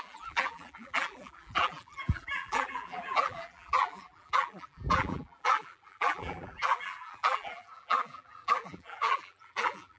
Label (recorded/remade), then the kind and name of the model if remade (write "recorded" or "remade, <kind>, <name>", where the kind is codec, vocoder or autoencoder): remade, vocoder, BigVGAN v2